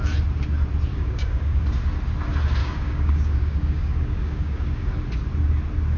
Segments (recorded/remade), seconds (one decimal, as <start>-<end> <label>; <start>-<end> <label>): 0.0-0.9 recorded; 0.9-1.6 remade; 1.6-2.6 recorded; 2.6-4.9 remade; 4.9-6.0 recorded